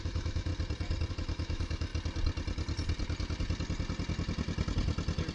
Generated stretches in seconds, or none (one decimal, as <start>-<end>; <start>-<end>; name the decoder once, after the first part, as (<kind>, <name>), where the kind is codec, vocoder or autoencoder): 0.0-0.5 (autoencoder, DAC-VAE); 1.1-1.9